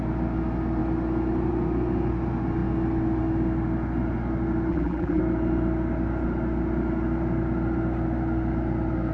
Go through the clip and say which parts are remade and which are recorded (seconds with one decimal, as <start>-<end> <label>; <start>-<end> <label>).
0.0-4.7 recorded; 4.7-5.2 remade; 5.2-9.1 recorded